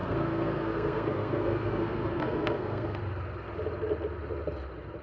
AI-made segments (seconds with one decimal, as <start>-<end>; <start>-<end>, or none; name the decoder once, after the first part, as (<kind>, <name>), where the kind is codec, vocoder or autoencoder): 0.0-3.0 (codec, SNAC)